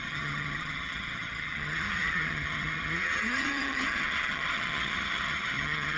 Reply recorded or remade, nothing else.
remade